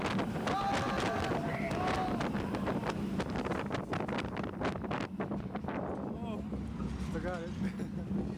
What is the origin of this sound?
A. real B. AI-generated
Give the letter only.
A